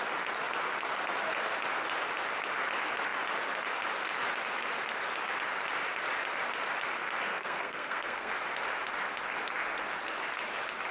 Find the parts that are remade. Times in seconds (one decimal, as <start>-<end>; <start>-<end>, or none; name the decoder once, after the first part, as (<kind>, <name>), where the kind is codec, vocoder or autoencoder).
7.3-8.3 (codec, SNAC)